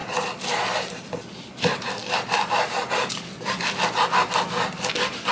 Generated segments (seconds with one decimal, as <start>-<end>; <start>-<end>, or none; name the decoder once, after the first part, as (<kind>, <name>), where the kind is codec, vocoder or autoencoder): 0.0-0.9 (vocoder, BigVGAN v2); 2.0-5.3